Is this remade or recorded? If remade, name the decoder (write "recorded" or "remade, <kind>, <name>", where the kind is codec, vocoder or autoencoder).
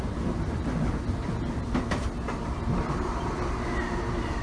recorded